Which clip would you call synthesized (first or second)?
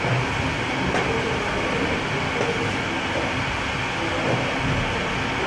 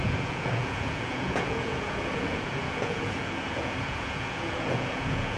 second